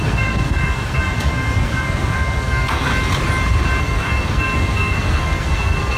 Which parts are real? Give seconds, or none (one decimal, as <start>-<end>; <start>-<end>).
2.9-3.8